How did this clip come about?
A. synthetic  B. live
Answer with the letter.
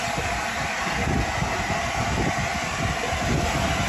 B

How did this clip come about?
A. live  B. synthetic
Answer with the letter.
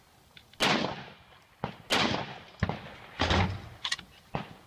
A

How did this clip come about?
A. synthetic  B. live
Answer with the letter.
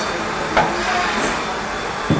B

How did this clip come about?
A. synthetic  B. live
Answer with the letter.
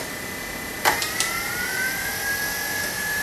B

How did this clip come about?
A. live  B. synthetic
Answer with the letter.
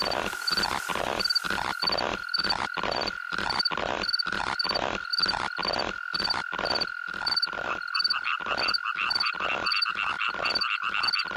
B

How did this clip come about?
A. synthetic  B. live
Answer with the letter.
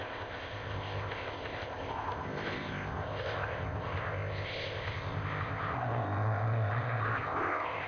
A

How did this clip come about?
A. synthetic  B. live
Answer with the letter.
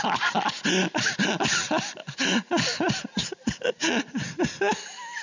B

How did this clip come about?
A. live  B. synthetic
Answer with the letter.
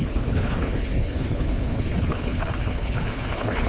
B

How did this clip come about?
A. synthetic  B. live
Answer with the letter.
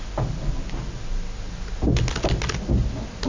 B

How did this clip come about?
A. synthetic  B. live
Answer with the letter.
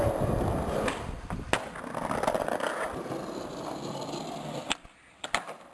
B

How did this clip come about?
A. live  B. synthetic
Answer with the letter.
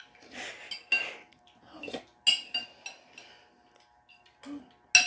A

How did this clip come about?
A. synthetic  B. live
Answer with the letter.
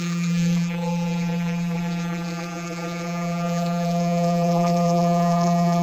A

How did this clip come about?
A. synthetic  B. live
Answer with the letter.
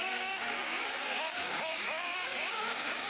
A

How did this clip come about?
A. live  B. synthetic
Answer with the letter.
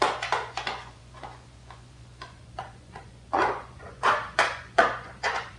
B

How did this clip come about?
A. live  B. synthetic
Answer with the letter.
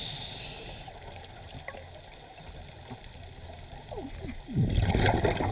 A